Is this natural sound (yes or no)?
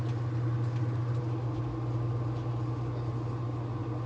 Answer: yes